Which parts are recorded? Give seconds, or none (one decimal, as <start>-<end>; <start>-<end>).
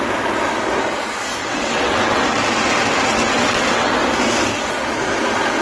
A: 0.0-1.4; 2.2-3.1; 3.9-5.6